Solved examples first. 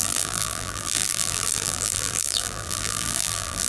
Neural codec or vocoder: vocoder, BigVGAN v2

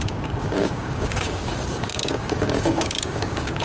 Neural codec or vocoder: codec, DAC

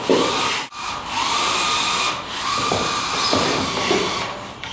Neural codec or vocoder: none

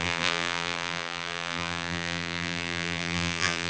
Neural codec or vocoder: vocoder, BigVGAN v2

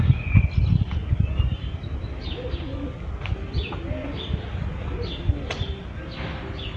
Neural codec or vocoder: none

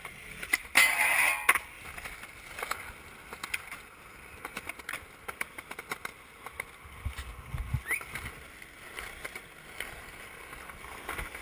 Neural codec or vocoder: none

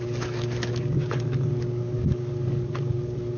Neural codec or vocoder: codec, DAC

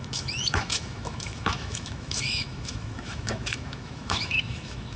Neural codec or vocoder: autoencoder, DAC-VAE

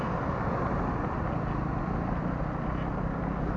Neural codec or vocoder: none